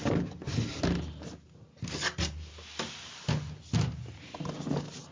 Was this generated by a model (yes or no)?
no